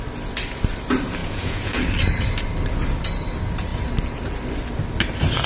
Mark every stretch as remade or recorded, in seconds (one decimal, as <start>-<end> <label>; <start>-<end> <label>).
0.0-1.2 recorded; 1.2-1.8 remade; 1.8-5.5 recorded